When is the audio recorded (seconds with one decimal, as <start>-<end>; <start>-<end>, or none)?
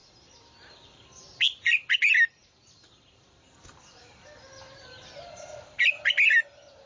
0.0-6.9